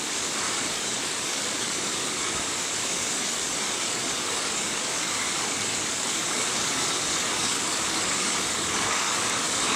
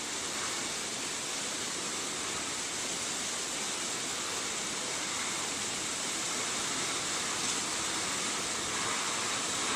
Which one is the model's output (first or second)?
first